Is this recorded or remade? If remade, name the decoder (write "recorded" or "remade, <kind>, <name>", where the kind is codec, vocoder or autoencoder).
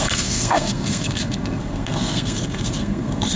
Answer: remade, codec, SNAC